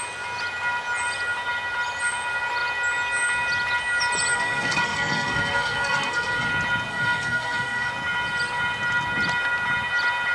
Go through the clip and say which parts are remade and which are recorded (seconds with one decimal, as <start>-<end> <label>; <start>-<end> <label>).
0.0-4.3 recorded; 4.3-6.5 remade; 6.5-6.9 recorded; 6.9-7.9 remade; 7.9-10.3 recorded